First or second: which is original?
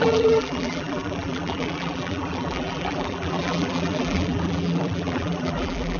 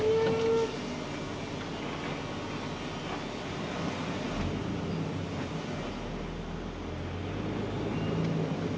second